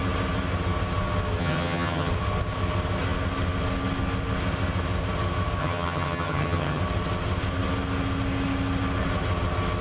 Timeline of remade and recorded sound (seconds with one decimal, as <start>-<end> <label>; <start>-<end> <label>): 0.0-1.4 recorded; 1.4-2.1 remade; 2.1-5.6 recorded; 5.6-6.8 remade; 6.8-9.8 recorded

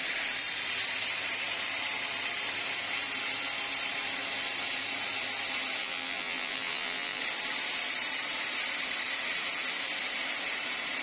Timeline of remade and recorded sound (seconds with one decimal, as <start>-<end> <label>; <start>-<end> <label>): 0.0-5.8 recorded; 5.8-7.2 remade; 7.2-11.0 recorded